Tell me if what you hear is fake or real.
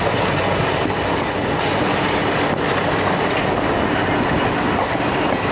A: real